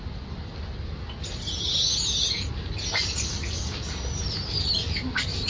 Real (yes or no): yes